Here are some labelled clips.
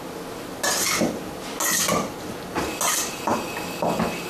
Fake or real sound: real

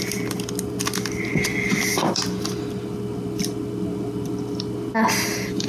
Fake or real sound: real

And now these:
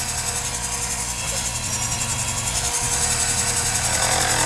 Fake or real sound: real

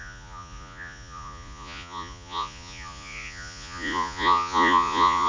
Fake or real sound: fake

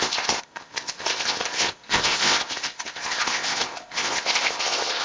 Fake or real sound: fake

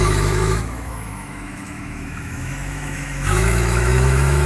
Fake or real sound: fake